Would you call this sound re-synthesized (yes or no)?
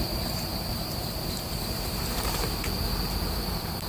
yes